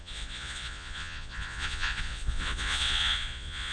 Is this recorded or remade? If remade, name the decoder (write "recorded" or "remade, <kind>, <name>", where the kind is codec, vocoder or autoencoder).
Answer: remade, vocoder, Vocos